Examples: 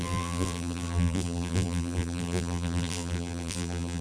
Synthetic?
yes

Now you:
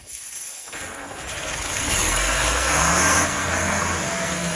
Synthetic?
yes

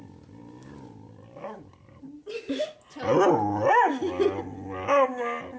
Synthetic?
no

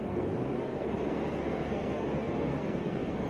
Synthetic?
yes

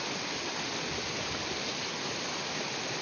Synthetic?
no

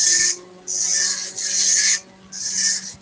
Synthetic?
no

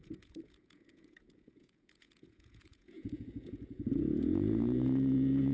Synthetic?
yes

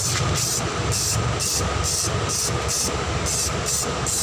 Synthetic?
no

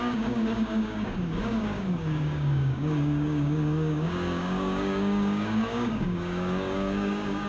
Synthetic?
yes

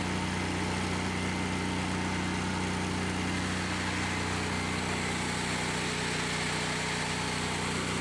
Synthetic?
no